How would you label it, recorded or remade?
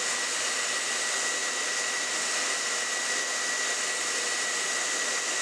recorded